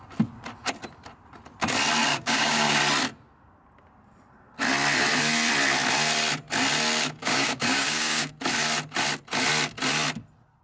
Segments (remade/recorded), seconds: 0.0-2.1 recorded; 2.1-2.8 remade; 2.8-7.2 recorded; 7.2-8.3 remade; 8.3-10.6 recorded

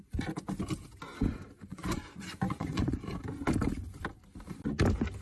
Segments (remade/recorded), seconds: 0.0-1.7 recorded; 1.7-3.0 remade; 3.0-5.2 recorded